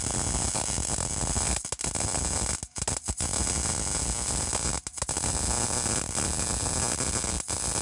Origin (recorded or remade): recorded